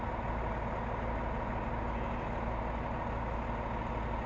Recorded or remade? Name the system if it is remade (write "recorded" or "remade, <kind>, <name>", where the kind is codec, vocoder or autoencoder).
recorded